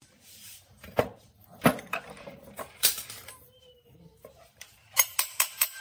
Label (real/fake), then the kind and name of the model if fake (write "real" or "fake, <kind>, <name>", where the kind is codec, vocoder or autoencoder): fake, vocoder, BigVGAN v2